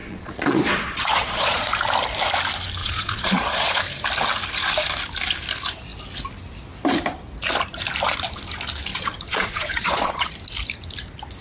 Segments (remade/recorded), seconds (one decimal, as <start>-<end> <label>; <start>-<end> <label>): 0.0-1.7 remade; 1.7-2.8 recorded; 2.8-3.8 remade; 3.8-8.9 recorded; 8.9-10.3 remade; 10.3-11.4 recorded